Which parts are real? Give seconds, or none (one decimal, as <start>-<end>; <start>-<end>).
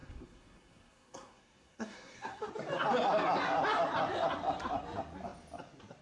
2.5-6.0